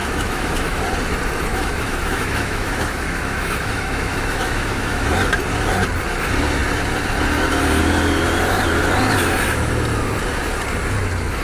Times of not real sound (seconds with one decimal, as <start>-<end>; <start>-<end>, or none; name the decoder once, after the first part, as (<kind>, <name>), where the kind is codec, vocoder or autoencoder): 0.0-0.8 (autoencoder, DAC-VAE); 1.5-5.1